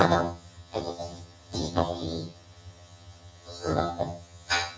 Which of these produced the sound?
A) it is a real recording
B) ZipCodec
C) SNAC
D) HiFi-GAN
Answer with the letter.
D